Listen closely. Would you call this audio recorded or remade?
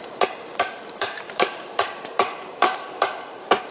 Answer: remade